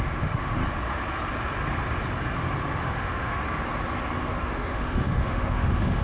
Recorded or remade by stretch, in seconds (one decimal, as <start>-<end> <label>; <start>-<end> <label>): 0.0-0.6 remade; 0.6-2.8 recorded; 2.8-3.4 remade; 3.4-4.4 recorded; 4.4-6.0 remade